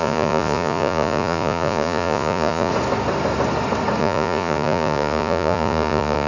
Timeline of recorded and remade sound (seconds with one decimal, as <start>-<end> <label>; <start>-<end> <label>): 0.0-2.7 remade; 2.7-4.0 recorded; 4.0-6.3 remade